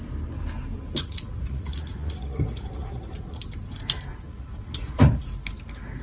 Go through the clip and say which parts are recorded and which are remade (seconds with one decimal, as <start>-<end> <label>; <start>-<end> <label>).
0.0-1.0 recorded; 1.0-3.4 remade; 3.4-4.1 recorded; 4.1-5.3 remade; 5.3-6.0 recorded